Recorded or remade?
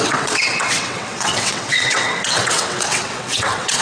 remade